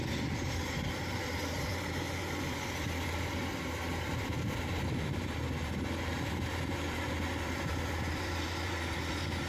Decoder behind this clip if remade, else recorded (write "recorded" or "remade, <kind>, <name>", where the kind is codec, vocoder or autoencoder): remade, vocoder, BigVGAN v2